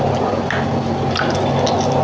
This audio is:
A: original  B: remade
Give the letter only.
A